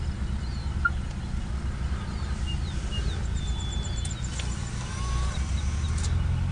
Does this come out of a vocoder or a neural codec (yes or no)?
no